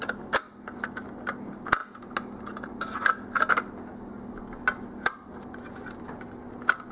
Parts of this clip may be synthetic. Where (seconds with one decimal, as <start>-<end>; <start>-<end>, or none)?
none